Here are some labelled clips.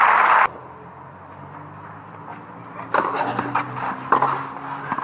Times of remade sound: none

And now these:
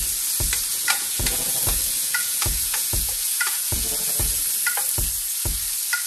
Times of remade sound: 0.7-4.4 (vocoder, Vocos)

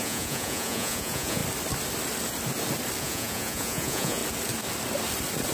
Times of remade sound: 0.0-1.4 (vocoder, Vocos); 3.0-4.2

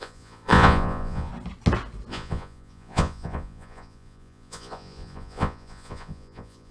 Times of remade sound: 0.0-1.3 (vocoder, Vocos); 2.1-6.7

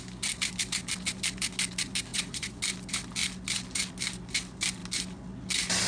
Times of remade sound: 2.1-2.6 (vocoder, Vocos)